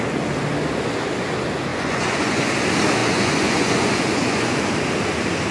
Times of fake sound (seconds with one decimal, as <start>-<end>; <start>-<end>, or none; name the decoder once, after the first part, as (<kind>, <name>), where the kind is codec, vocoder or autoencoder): 1.7-2.5 (vocoder, Vocos); 3.0-4.6